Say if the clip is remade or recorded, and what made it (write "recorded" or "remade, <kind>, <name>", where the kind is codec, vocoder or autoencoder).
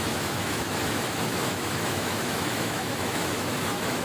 remade, autoencoder, DAC-VAE